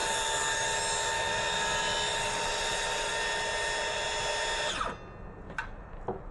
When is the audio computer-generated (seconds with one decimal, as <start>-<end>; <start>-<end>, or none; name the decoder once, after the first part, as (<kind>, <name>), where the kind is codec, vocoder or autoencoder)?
2.1-3.1 (vocoder, BigVGAN v2)